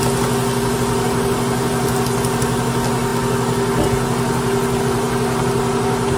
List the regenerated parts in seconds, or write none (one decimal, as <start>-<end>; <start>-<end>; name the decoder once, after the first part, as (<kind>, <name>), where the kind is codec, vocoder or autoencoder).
none